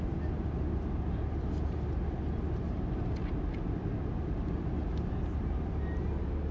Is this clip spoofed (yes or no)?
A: no